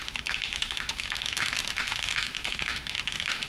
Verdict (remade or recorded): remade